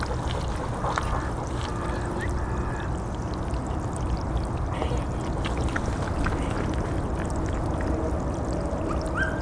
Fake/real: real